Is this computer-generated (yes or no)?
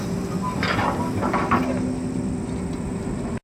no